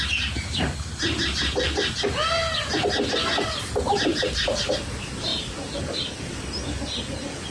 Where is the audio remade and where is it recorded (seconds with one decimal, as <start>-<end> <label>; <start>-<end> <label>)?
0.0-4.1 recorded; 4.1-4.7 remade; 4.7-5.3 recorded; 5.3-5.8 remade; 5.8-7.5 recorded